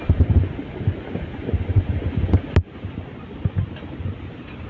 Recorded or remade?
recorded